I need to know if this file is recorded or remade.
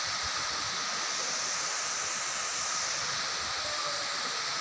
recorded